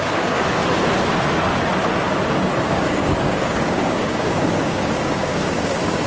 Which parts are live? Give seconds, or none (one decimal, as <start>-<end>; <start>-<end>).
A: 0.6-2.7